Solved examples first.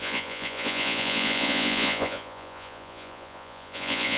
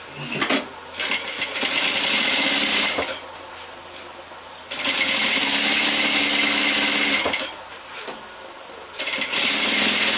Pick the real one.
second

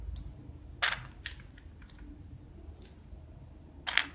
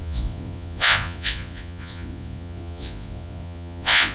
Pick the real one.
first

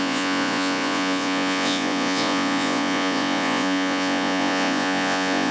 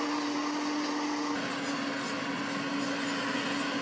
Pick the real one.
second